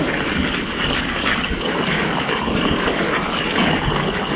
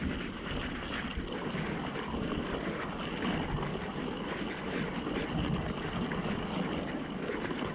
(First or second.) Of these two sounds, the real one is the second